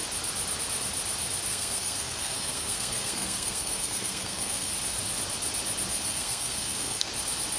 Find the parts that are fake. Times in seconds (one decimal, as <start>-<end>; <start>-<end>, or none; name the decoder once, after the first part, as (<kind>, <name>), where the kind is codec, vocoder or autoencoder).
1.5-4.7 (codec, SNAC); 5.9-7.1